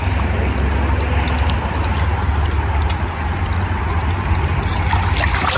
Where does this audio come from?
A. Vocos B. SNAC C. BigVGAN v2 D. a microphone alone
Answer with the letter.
D